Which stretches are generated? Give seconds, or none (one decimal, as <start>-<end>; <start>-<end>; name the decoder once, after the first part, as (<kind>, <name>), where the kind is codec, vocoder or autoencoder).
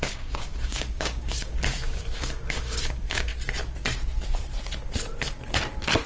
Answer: 0.0-3.3 (codec, DAC)